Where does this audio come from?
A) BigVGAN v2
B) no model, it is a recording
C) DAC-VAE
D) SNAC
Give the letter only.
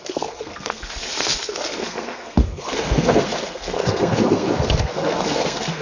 D